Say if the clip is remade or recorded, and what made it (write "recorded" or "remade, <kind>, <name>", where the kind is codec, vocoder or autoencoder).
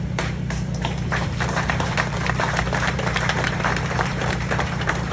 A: remade, vocoder, BigVGAN v2